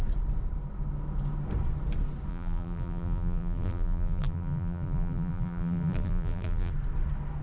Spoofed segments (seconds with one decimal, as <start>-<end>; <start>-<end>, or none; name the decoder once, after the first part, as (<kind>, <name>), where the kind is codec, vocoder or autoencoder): 2.3-6.7 (vocoder, BigVGAN v2)